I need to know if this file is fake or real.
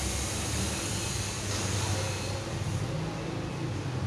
real